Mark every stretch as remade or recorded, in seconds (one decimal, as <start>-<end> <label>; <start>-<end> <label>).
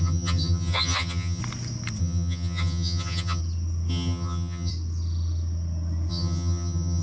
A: 0.0-1.4 remade; 1.4-2.0 recorded; 2.0-3.4 remade; 3.4-3.9 recorded; 3.9-4.7 remade; 4.7-6.1 recorded; 6.1-7.0 remade